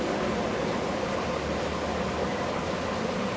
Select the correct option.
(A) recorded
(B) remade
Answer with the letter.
A